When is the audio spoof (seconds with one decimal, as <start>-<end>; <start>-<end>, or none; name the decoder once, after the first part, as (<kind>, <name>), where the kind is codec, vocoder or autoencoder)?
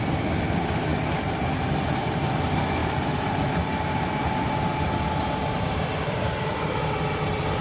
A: none